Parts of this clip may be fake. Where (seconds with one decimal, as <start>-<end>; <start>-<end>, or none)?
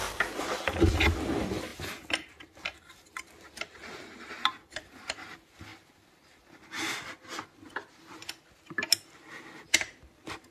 none